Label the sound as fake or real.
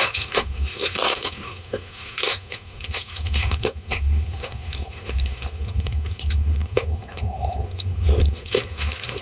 fake